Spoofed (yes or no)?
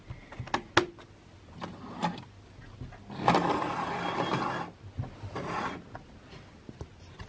no